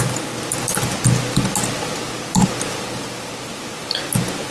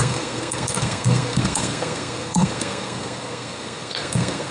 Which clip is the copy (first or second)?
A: second